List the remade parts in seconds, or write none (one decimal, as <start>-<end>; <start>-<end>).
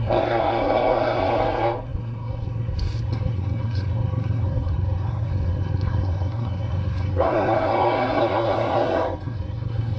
0.0-10.0